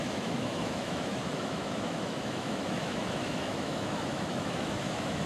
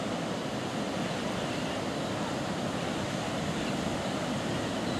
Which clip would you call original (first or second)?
second